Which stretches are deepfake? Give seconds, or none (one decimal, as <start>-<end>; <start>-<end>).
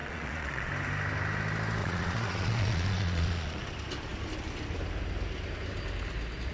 0.0-0.7; 1.8-3.6